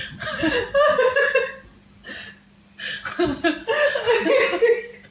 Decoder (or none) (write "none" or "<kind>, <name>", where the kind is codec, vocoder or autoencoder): none